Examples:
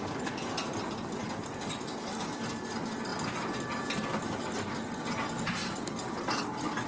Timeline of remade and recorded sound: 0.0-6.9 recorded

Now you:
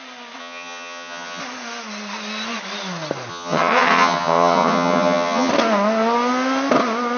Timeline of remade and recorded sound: 0.0-0.4 recorded; 0.4-1.4 remade; 1.4-3.3 recorded; 3.3-5.5 remade; 5.5-7.2 recorded

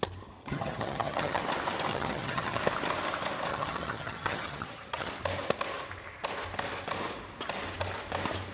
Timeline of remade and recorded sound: 0.0-0.4 recorded; 0.4-1.4 remade; 1.4-1.9 recorded; 1.9-2.6 remade; 2.6-3.5 recorded; 3.5-5.1 remade; 5.1-8.5 recorded

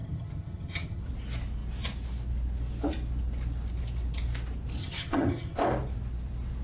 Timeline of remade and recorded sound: 0.0-1.0 remade; 1.0-4.8 recorded; 4.8-5.6 remade; 5.6-6.6 recorded